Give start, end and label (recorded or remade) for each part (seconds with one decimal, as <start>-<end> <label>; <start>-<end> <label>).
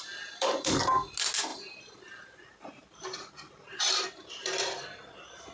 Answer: 0.0-1.5 recorded; 1.5-4.8 remade; 4.8-5.5 recorded